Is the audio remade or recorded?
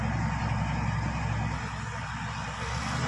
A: recorded